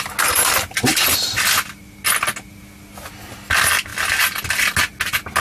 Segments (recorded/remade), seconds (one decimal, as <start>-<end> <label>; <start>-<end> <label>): 0.0-5.4 recorded